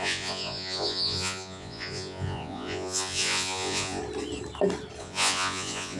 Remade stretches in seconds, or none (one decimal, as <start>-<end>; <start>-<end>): 0.0-4.0; 5.0-6.0